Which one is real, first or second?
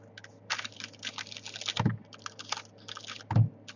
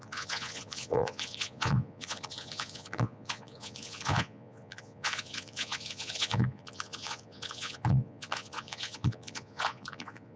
first